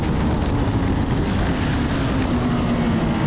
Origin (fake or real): real